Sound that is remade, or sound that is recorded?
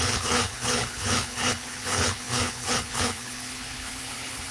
remade